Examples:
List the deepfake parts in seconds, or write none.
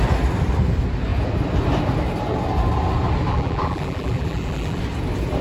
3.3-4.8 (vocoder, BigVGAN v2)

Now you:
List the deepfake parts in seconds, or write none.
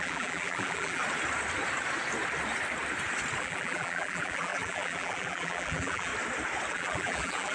0.0-1.0 (vocoder, BigVGAN v2); 3.4-6.1; 6.7-7.5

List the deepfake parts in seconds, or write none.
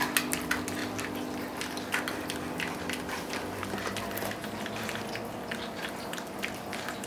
none